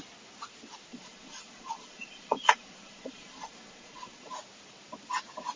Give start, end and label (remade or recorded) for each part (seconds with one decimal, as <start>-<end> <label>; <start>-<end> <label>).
0.0-0.9 recorded; 0.9-4.3 remade; 4.3-5.6 recorded